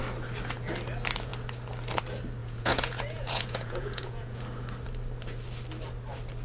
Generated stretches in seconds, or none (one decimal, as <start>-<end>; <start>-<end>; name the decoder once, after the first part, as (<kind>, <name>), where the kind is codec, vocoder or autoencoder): 2.4-4.4 (vocoder, Vocos)